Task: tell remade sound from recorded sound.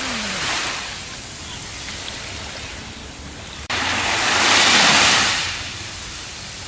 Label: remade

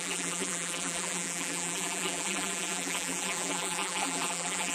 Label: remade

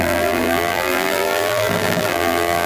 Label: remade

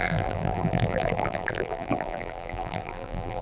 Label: remade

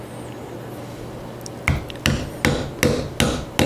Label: recorded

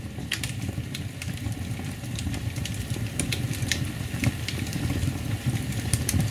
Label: remade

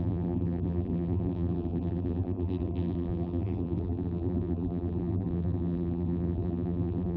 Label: remade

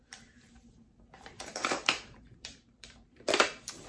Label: remade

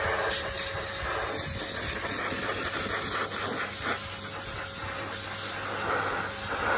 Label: recorded